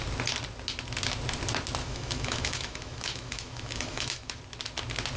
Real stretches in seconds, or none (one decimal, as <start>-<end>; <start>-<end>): 0.0-1.8; 4.4-5.2

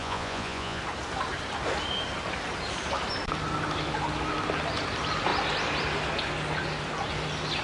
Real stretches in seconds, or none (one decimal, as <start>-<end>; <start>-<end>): 0.8-7.6

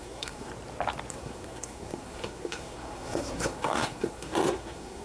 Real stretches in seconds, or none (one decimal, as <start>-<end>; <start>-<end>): 0.5-1.1

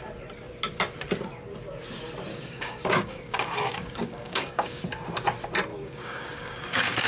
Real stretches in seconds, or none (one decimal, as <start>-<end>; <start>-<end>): 0.0-2.3; 4.8-5.7

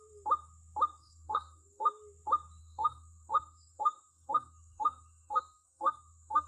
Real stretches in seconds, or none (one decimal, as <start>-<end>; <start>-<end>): 0.0-1.0; 1.9-2.6

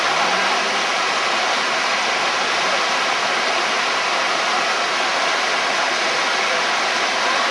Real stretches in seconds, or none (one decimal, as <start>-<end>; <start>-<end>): 0.0-7.5

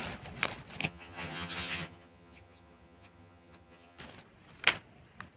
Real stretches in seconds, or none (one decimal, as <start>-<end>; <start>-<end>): 0.0-0.8; 4.0-5.4